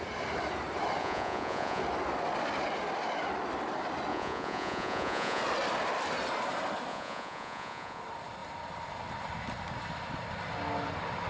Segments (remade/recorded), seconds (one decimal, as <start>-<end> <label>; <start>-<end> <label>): 0.0-1.0 recorded; 1.0-1.8 remade; 1.8-4.1 recorded; 4.1-5.4 remade; 5.4-6.9 recorded; 6.9-8.0 remade; 8.0-11.3 recorded